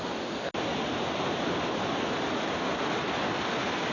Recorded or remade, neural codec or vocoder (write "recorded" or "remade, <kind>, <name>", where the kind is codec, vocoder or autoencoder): recorded